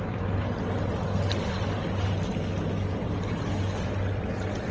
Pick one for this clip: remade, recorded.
recorded